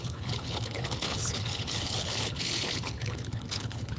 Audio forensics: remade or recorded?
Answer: remade